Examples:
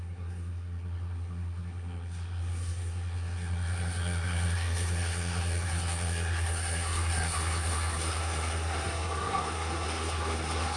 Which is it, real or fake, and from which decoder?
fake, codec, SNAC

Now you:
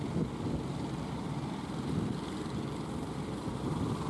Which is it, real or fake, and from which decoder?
real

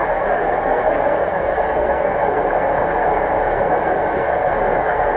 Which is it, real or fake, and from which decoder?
fake, codec, SNAC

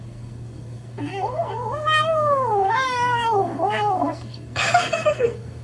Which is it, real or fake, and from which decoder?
fake, codec, SNAC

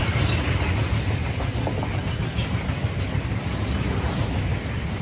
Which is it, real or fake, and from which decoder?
real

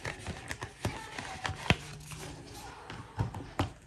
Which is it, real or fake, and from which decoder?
real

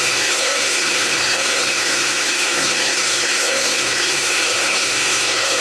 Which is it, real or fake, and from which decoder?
fake, codec, SNAC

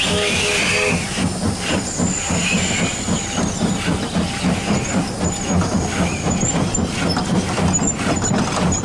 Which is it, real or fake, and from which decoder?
real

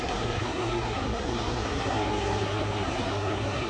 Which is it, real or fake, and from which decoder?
fake, codec, SNAC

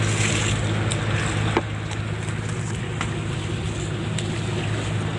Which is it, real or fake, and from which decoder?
real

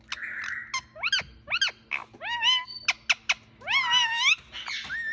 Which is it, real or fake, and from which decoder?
real